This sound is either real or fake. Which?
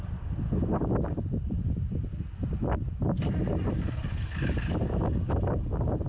real